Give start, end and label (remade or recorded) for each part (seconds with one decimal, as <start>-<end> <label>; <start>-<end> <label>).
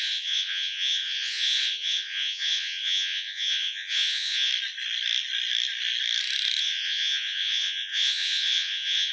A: 0.0-4.5 remade; 4.5-6.6 recorded; 6.6-9.1 remade